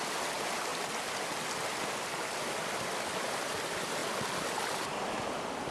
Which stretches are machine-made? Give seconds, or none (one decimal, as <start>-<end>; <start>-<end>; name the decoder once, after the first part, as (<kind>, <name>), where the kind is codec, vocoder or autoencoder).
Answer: 0.0-0.7 (vocoder, BigVGAN v2); 1.8-5.7